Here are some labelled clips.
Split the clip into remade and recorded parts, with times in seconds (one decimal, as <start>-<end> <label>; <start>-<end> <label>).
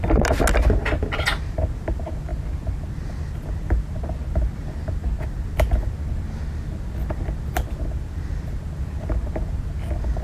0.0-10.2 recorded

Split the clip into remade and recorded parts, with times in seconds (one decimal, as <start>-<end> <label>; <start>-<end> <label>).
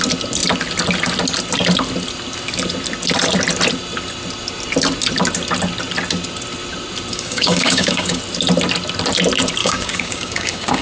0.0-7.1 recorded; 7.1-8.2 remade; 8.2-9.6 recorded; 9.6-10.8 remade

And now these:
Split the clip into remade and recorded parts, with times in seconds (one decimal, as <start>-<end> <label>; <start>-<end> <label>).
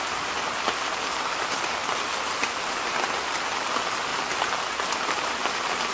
0.0-5.9 recorded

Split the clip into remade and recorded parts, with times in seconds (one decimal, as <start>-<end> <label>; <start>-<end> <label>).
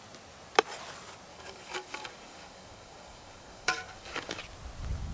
0.0-1.3 recorded; 1.3-4.4 remade; 4.4-5.1 recorded